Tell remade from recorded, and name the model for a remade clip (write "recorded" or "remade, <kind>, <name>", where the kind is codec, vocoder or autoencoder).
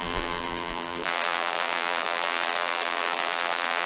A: remade, vocoder, BigVGAN v2